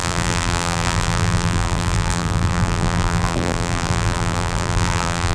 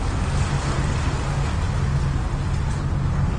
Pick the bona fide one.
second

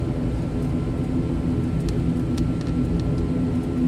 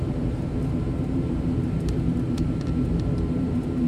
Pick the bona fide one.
first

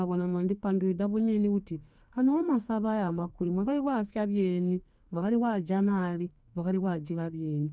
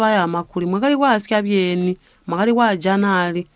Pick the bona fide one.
second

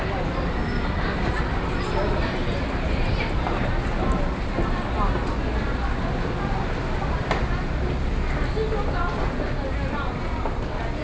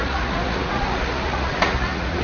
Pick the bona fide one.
first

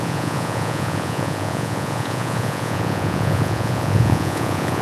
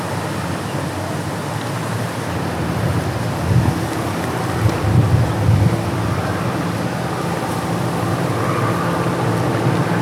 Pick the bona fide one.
second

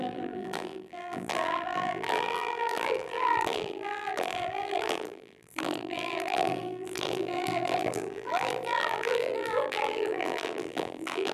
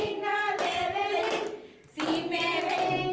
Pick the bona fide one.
second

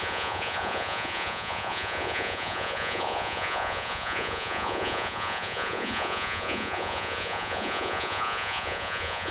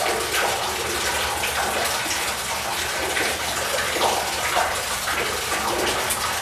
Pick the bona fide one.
second